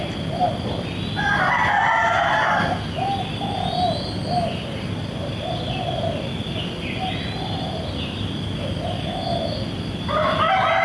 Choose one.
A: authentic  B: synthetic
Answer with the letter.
A